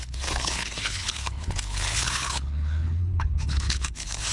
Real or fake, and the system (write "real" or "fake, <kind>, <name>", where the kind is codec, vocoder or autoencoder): fake, codec, HILCodec